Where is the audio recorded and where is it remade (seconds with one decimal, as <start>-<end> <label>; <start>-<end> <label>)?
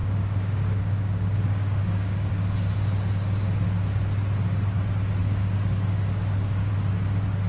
0.0-2.3 remade; 2.3-5.2 recorded; 5.2-6.7 remade; 6.7-7.5 recorded